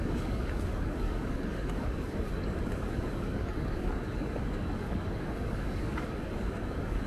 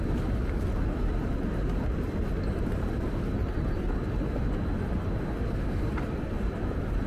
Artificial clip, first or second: first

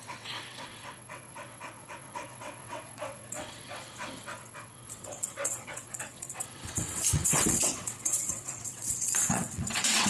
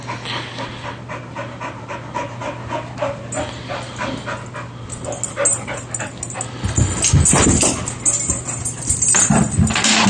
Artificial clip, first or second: first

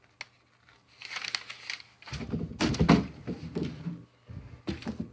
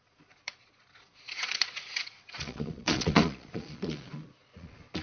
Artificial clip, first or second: second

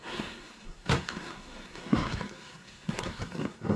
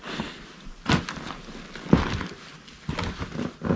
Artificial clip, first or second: first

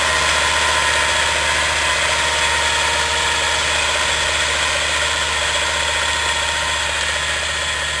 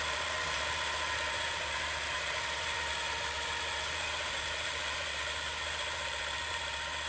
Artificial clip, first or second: second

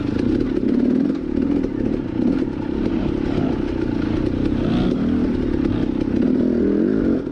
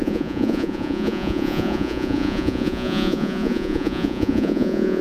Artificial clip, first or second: second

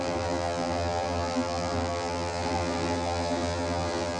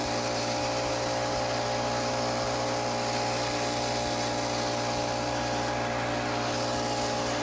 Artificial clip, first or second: first